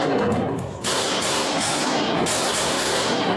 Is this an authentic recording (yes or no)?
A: no